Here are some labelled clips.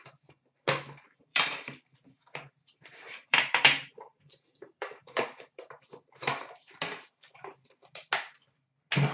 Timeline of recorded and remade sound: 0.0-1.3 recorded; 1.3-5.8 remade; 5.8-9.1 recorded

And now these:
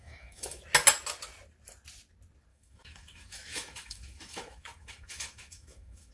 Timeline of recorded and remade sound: 0.0-0.6 remade; 0.6-2.5 recorded; 2.5-6.1 remade

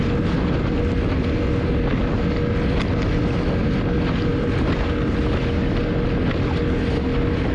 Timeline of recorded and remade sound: 0.0-7.5 recorded